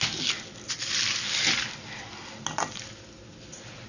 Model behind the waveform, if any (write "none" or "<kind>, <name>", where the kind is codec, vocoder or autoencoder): none